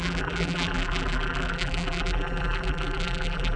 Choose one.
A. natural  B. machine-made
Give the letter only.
B